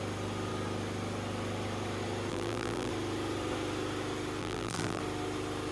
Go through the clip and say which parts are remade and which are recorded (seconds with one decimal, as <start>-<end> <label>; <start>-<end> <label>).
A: 0.0-2.3 recorded; 2.3-2.9 remade; 2.9-4.4 recorded; 4.4-5.0 remade; 5.0-5.7 recorded